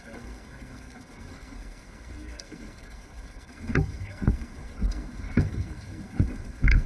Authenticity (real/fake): fake